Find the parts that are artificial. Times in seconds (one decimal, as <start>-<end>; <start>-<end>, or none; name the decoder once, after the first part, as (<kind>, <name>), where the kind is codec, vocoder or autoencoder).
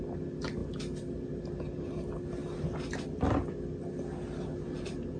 none